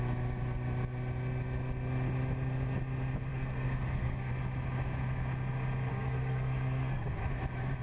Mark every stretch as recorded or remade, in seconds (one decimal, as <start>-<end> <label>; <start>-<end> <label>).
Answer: 0.0-3.3 recorded; 3.3-4.3 remade; 4.3-5.9 recorded; 5.9-7.1 remade; 7.1-7.8 recorded